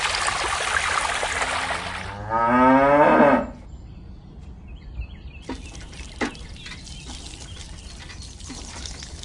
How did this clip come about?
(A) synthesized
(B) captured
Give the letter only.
B